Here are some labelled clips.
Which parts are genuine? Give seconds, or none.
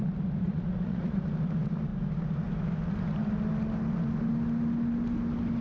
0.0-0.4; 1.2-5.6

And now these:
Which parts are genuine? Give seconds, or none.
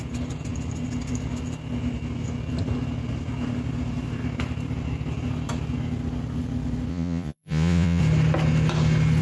0.0-6.9; 8.0-9.2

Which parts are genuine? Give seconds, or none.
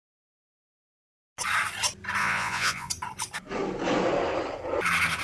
0.0-2.2; 2.9-5.2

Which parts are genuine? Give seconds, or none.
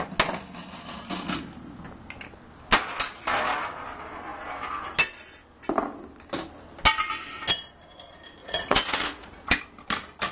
0.0-8.4; 9.6-10.3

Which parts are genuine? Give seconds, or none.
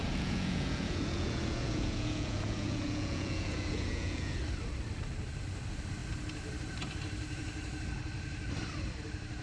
4.4-9.4